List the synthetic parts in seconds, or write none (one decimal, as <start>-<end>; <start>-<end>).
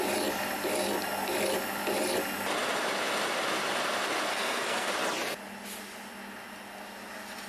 4.3-4.9